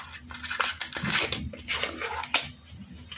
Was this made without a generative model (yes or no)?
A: yes